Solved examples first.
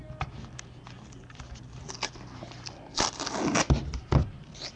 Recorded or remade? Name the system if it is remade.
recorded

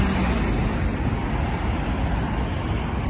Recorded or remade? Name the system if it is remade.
recorded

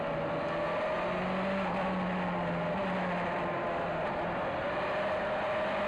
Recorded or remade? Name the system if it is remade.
recorded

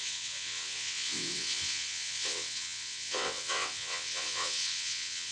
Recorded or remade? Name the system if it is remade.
remade, vocoder, WaveNeXt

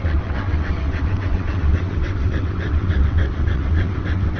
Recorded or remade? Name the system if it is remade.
remade, vocoder, WaveNeXt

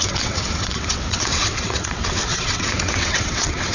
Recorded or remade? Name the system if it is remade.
remade, vocoder, WaveNeXt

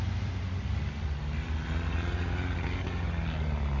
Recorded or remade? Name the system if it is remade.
recorded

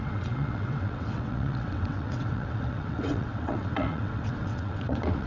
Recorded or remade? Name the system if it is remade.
remade, vocoder, WaveNeXt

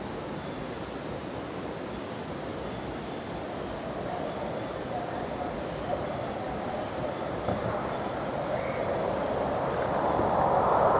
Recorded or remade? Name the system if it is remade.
recorded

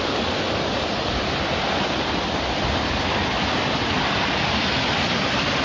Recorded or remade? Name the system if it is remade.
recorded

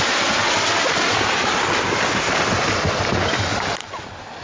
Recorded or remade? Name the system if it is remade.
recorded